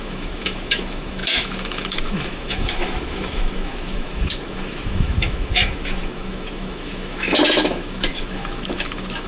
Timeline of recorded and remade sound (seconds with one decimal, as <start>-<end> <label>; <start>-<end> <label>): 0.0-9.3 remade